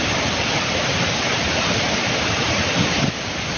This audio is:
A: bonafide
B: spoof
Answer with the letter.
A